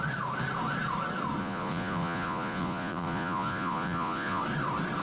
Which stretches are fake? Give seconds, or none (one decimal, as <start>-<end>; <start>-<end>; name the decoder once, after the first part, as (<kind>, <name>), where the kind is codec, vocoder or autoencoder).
1.4-4.4 (vocoder, Vocos)

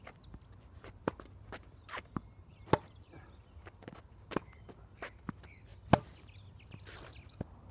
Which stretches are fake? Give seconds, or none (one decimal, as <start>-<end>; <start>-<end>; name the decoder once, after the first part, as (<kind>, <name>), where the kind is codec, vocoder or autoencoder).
none